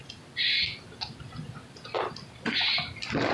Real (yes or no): yes